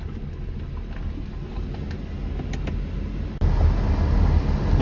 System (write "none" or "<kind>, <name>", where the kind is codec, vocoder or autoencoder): none